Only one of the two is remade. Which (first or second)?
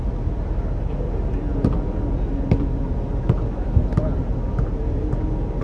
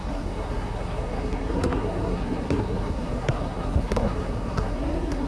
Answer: second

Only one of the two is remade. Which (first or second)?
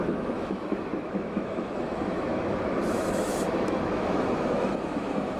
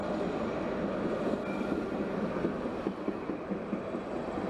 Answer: first